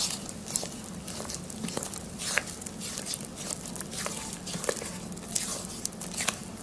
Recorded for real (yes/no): yes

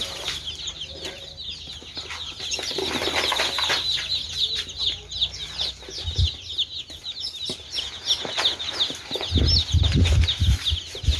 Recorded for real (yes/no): yes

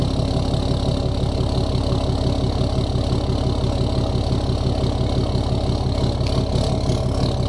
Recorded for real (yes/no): yes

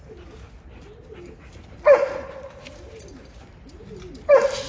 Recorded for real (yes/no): yes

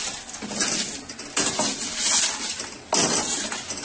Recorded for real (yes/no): yes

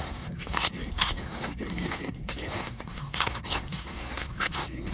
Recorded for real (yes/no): no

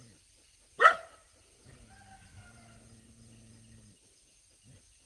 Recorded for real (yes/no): yes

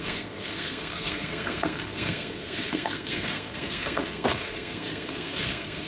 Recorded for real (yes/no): no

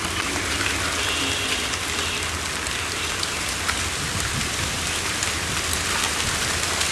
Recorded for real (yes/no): yes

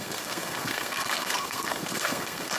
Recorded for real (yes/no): no